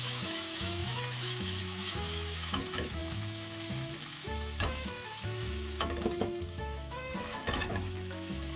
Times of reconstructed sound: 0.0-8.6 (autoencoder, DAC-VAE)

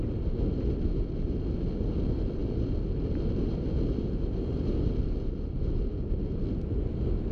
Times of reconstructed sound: none

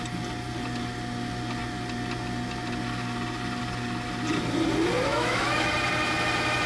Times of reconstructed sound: 5.1-5.7 (autoencoder, DAC-VAE)

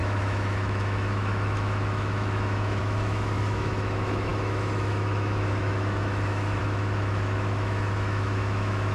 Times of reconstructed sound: 0.0-8.9 (autoencoder, DAC-VAE)

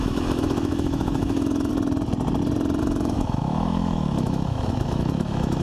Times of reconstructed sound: 0.0-1.7 (autoencoder, DAC-VAE); 2.8-5.6